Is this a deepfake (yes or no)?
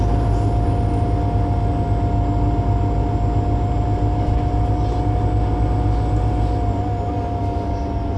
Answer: no